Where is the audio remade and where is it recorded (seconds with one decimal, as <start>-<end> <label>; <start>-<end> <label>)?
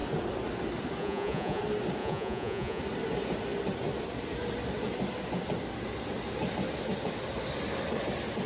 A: 0.0-1.0 recorded; 1.0-1.6 remade; 1.6-2.0 recorded; 2.0-2.8 remade; 2.8-8.5 recorded